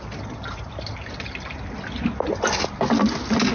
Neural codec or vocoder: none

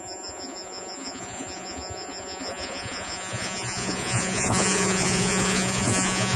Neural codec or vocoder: vocoder, Vocos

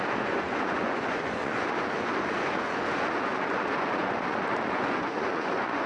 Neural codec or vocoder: vocoder, Vocos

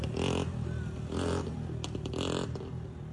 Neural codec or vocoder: none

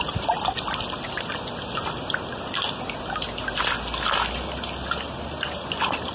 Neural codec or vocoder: none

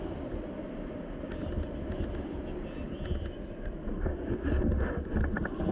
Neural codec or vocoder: none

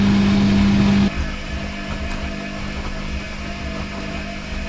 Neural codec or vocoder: none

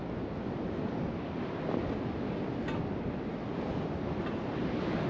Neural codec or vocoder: none